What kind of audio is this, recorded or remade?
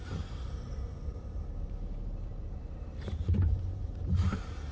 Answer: remade